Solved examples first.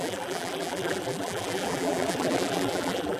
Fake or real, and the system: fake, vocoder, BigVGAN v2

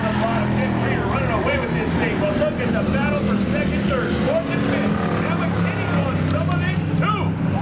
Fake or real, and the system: real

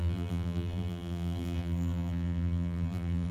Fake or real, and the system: fake, vocoder, BigVGAN v2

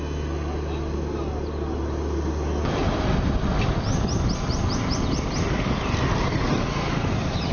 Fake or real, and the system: real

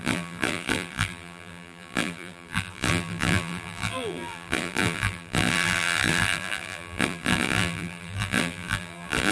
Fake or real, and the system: fake, vocoder, BigVGAN v2